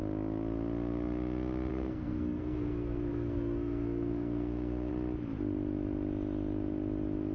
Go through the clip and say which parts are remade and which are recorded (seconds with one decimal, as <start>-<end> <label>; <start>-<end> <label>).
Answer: 0.0-1.7 recorded; 1.7-4.9 remade; 4.9-7.3 recorded

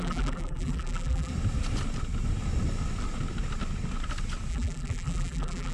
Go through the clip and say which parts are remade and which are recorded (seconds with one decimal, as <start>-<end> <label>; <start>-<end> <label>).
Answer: 0.0-1.3 remade; 1.3-4.5 recorded; 4.5-5.7 remade